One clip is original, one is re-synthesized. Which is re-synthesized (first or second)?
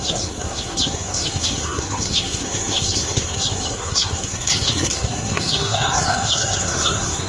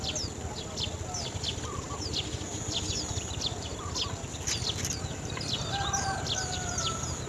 first